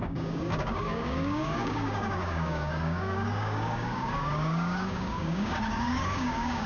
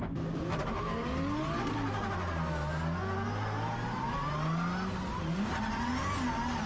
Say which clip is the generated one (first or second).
first